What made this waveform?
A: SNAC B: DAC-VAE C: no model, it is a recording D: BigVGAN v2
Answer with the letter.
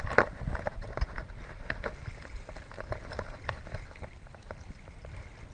C